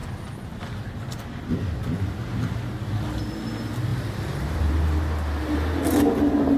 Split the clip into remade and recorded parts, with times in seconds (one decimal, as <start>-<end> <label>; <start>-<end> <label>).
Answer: 0.0-1.0 remade; 1.0-2.6 recorded; 2.6-3.2 remade; 3.2-3.9 recorded; 3.9-4.7 remade; 4.7-6.6 recorded